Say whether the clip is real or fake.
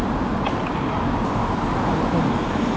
fake